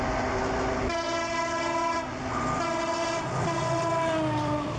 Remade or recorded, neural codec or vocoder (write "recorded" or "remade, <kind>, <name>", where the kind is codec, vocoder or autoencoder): recorded